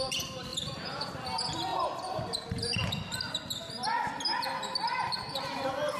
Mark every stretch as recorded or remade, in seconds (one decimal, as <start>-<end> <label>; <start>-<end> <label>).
0.0-0.5 recorded; 0.5-1.1 remade; 1.1-6.0 recorded